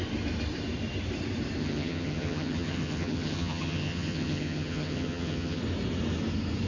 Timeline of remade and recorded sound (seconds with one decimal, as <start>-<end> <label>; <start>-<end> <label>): 0.0-1.6 recorded; 1.6-5.6 remade; 5.6-6.7 recorded